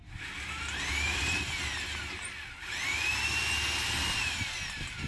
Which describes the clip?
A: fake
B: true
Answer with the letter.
B